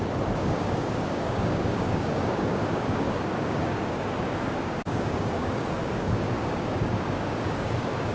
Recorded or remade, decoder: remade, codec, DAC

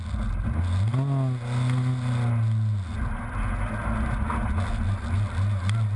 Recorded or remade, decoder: recorded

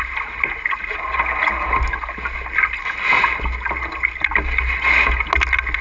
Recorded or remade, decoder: recorded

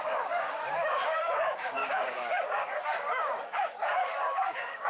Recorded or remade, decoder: remade, codec, DAC